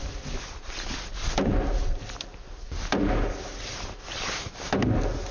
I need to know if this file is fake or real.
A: real